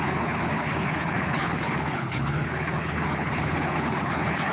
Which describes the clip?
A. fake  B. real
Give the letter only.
A